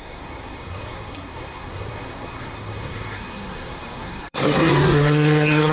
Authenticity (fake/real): fake